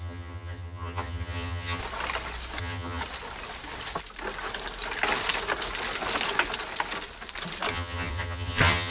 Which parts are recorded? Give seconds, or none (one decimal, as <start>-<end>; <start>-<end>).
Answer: 1.8-2.6; 3.0-7.7